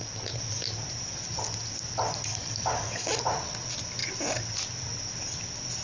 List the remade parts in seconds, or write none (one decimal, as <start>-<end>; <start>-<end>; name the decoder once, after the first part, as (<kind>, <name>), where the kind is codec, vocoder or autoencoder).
2.3-3.2 (codec, DAC)